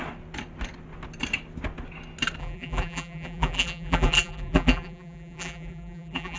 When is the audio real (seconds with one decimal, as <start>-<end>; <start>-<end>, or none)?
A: 0.0-2.4